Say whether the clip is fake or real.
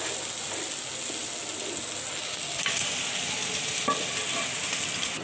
real